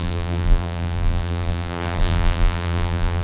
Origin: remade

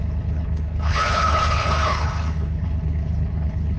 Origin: remade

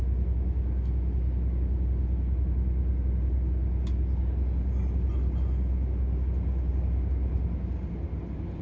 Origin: recorded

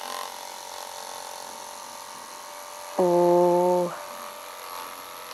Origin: recorded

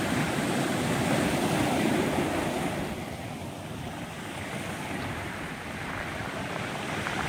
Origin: recorded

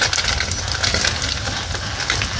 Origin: recorded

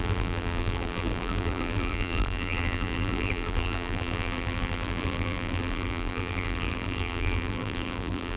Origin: remade